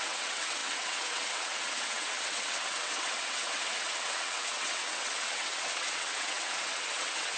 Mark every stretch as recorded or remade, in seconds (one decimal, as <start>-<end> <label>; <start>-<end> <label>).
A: 0.0-7.4 remade